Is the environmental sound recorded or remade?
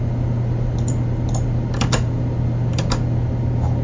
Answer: recorded